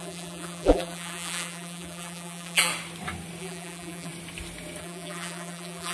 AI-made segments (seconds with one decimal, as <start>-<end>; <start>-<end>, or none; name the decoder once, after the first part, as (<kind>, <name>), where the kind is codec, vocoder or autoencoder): 0.0-2.7 (vocoder, BigVGAN v2); 3.4-4.1; 4.8-5.9